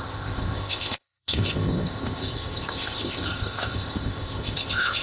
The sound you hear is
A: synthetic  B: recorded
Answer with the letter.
A